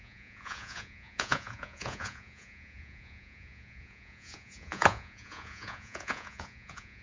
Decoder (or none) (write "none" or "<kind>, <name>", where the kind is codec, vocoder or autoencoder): vocoder, Vocos